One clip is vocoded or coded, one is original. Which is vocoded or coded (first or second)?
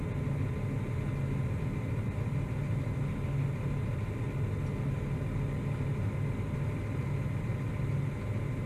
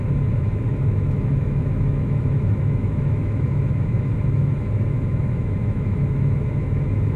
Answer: second